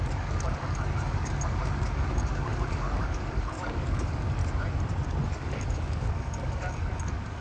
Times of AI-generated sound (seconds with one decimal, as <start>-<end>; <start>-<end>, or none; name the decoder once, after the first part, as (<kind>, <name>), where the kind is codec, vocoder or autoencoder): 0.0-4.4 (codec, DAC); 5.3-7.4